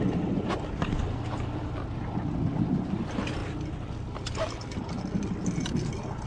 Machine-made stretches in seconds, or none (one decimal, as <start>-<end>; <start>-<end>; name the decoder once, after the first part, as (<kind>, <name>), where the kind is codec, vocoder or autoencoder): 3.4-4.5 (vocoder, BigVGAN v2)